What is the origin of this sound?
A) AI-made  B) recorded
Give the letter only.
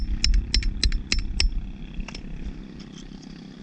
B